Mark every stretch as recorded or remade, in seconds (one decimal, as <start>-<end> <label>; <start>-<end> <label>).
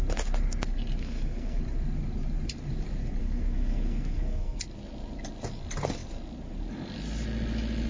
0.0-1.0 recorded; 1.0-1.6 remade; 1.6-3.2 recorded; 3.2-4.6 remade; 4.6-7.9 recorded